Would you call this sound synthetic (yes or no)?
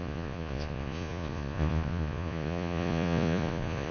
yes